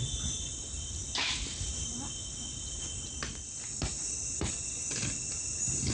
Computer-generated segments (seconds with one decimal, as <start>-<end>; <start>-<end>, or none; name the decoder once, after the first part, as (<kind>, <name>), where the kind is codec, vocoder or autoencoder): none